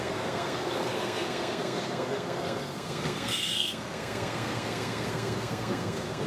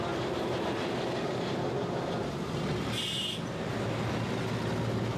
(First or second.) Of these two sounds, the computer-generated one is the first